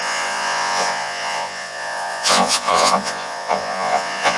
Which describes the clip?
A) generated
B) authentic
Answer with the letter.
A